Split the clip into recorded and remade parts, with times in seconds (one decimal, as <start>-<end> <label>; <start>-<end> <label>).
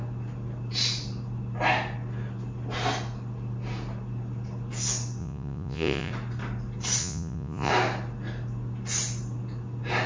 0.0-5.2 recorded; 5.2-6.1 remade; 6.1-7.0 recorded; 7.0-7.7 remade; 7.7-10.1 recorded